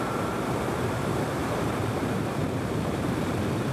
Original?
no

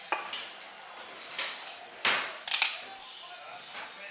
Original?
yes